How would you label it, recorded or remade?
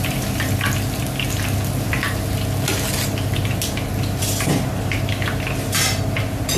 recorded